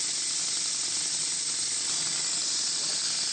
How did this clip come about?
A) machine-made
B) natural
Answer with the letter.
B